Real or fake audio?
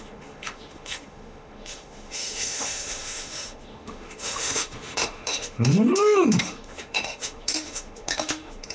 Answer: fake